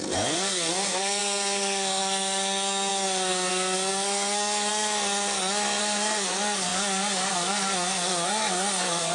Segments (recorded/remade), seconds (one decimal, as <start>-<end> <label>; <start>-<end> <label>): 0.0-4.7 remade; 4.7-5.8 recorded; 5.8-9.1 remade

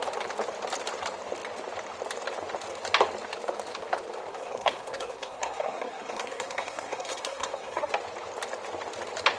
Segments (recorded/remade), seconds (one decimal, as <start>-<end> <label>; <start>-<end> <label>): 0.0-4.3 recorded; 4.3-7.9 remade; 7.9-9.4 recorded

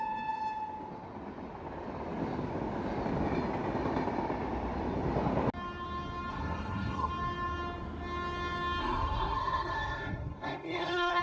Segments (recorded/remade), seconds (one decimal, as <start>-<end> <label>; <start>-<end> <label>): 0.0-6.3 recorded; 6.3-7.1 remade; 7.1-8.8 recorded; 8.8-11.2 remade

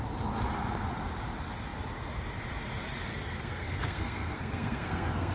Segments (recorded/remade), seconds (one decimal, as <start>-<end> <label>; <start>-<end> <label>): 0.0-3.1 recorded; 3.1-5.3 remade

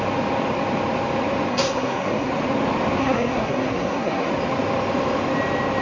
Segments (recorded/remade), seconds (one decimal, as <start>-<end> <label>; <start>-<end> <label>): 0.0-1.5 recorded; 1.5-2.3 remade; 2.3-3.0 recorded; 3.0-4.3 remade; 4.3-5.8 recorded